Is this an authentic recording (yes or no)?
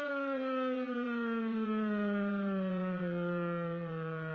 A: no